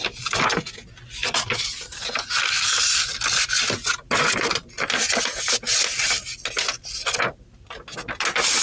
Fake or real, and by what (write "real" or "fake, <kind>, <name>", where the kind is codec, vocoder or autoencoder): real